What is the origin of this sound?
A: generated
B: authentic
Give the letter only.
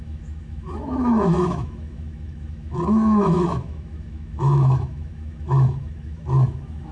A